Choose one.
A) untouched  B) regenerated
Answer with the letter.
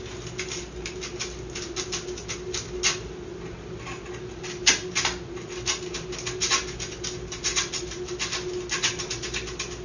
A